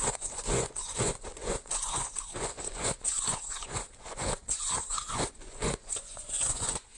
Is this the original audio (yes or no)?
no